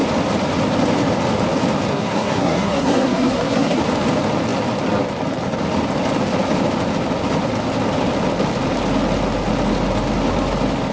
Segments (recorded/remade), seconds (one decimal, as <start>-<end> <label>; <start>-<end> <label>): 0.0-1.9 recorded; 1.9-3.8 remade; 3.8-10.9 recorded